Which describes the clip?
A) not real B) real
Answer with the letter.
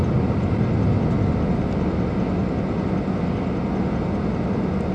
B